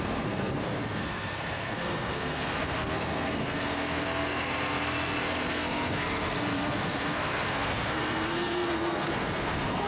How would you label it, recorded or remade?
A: remade